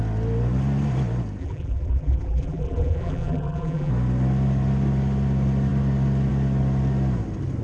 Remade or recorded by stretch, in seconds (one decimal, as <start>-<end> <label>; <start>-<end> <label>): 0.0-1.4 recorded; 1.4-3.9 remade; 3.9-7.6 recorded